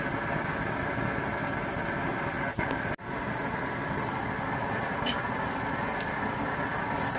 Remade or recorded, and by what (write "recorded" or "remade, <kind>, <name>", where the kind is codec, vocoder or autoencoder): recorded